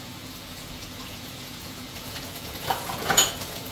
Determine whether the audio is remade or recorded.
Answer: remade